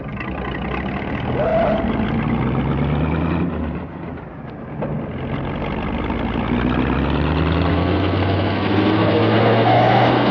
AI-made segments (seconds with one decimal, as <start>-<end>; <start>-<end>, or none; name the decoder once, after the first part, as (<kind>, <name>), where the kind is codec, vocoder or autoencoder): 7.7-10.3 (codec, SNAC)